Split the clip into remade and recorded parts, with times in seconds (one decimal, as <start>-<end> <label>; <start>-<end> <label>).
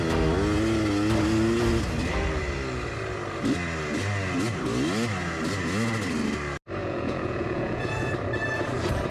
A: 0.0-6.8 recorded; 6.8-8.1 remade; 8.1-9.1 recorded